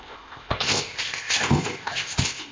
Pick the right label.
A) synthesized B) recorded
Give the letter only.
A